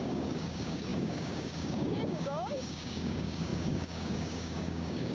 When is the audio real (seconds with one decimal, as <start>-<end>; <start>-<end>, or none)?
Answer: none